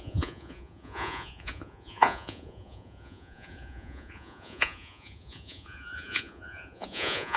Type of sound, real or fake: fake